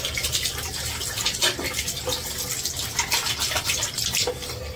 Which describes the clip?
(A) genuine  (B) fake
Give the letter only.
A